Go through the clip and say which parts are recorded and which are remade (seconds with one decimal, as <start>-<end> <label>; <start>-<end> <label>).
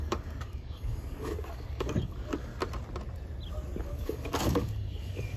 0.0-2.5 remade; 2.5-3.8 recorded; 3.8-5.4 remade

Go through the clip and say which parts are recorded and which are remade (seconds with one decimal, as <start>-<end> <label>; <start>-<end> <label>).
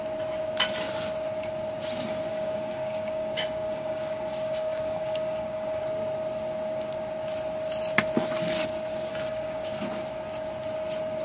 0.0-2.3 recorded; 2.3-5.8 remade; 5.8-9.1 recorded; 9.1-9.8 remade; 9.8-11.2 recorded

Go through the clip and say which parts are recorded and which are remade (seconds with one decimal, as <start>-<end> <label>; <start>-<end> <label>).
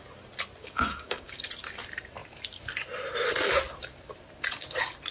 0.0-0.6 recorded; 0.6-1.4 remade; 1.4-5.1 recorded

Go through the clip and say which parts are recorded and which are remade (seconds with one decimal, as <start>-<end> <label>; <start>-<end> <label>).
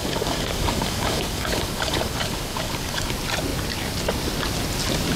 0.0-3.1 remade; 3.1-5.2 recorded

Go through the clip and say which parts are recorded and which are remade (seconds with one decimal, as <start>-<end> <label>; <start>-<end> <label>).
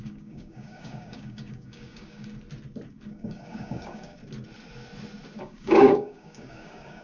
0.0-2.3 remade; 2.3-2.9 recorded; 2.9-4.2 remade; 4.2-5.4 recorded; 5.4-7.0 remade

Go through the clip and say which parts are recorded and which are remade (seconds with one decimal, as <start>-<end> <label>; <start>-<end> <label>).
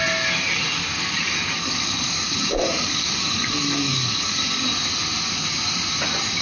0.0-0.9 recorded; 0.9-4.7 remade; 4.7-6.4 recorded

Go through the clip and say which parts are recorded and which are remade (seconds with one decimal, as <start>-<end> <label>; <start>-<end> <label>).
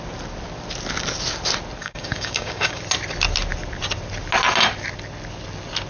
0.0-1.8 recorded; 1.8-2.8 remade; 2.8-5.9 recorded